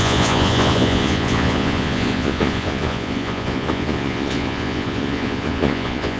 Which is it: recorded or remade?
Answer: remade